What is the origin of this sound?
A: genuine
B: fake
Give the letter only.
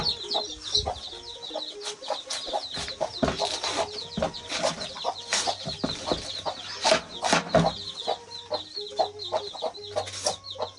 A